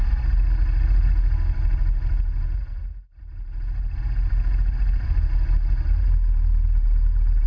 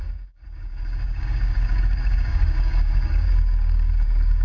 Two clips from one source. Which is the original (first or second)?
first